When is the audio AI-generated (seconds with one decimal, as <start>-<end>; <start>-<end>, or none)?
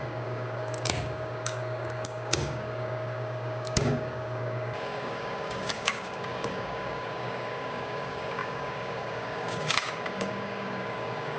0.0-11.4